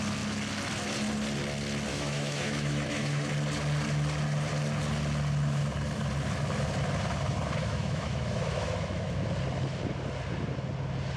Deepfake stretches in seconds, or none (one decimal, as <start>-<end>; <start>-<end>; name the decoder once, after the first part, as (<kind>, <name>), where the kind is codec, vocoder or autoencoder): 1.9-3.3 (autoencoder, DAC-VAE); 7.6-9.1